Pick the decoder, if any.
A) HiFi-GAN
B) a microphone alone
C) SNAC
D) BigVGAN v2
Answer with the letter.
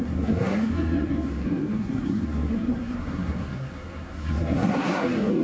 C